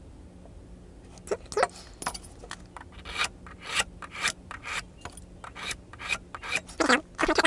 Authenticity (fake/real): real